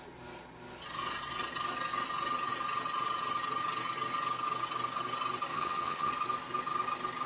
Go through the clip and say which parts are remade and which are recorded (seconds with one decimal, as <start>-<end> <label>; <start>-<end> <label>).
0.0-5.5 recorded; 5.5-6.1 remade; 6.1-7.3 recorded